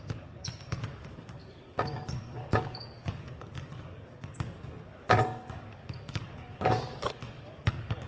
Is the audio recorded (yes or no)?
no